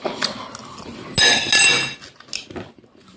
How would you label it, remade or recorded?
recorded